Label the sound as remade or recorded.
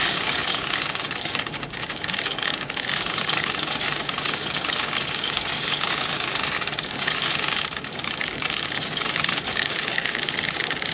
remade